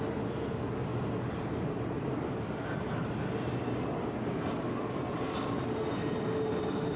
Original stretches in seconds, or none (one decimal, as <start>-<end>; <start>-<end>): 0.0-7.0